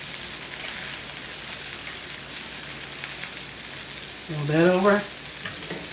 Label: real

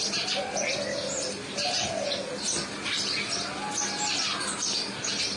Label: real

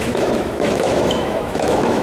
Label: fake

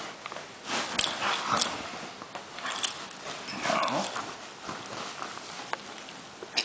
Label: real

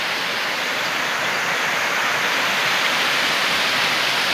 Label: real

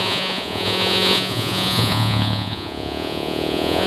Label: fake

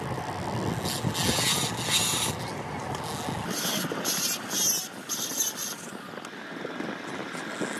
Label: real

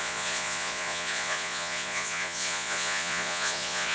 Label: fake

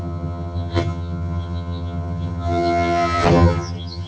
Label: fake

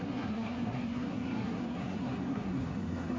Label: fake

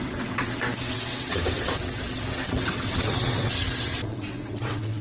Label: fake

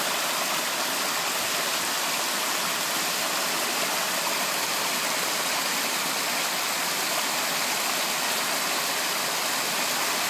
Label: real